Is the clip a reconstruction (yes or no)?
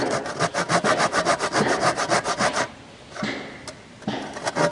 no